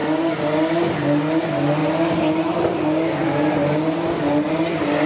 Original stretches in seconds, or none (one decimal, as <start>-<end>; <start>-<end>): 0.0-5.1